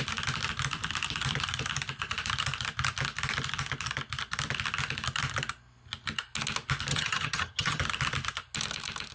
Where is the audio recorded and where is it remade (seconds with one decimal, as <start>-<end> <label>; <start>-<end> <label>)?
0.0-6.9 recorded; 6.9-7.8 remade; 7.8-9.1 recorded

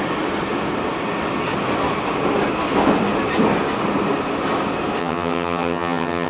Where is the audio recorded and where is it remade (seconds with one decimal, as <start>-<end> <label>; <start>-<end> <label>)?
0.0-5.0 recorded; 5.0-6.3 remade

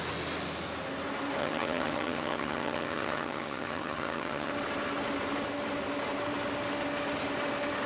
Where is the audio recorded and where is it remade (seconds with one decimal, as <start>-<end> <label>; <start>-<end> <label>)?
0.0-1.4 recorded; 1.4-4.5 remade; 4.5-7.9 recorded

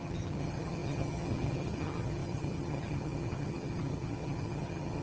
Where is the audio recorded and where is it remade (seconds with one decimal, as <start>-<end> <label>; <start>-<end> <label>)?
0.0-5.0 remade

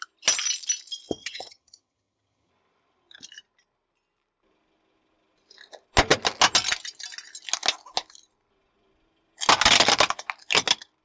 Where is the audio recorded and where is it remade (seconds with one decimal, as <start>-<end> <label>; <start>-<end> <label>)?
0.0-1.2 recorded; 1.2-2.5 remade; 2.5-11.0 recorded

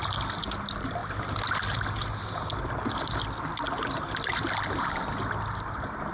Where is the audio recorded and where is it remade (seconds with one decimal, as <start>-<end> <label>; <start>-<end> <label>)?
0.0-6.1 recorded

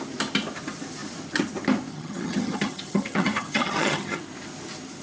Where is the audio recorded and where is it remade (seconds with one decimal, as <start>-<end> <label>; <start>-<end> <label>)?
0.0-1.9 recorded; 1.9-4.2 remade; 4.2-5.0 recorded

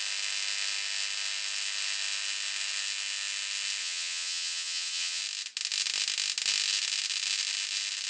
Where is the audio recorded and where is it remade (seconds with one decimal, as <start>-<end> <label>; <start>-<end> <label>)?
0.0-3.8 recorded; 3.8-5.2 remade; 5.2-8.1 recorded